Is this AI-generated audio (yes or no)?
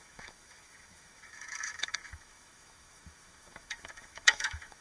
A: yes